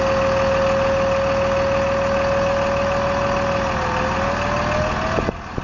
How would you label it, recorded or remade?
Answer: recorded